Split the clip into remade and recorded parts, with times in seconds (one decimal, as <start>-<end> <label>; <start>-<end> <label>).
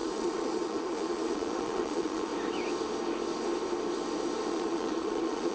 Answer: 0.0-2.3 remade; 2.3-4.5 recorded; 4.5-5.5 remade